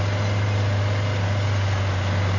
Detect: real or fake real